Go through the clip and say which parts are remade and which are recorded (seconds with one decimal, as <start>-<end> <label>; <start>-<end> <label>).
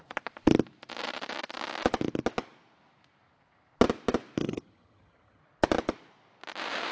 0.0-4.4 recorded; 4.4-5.4 remade; 5.4-6.9 recorded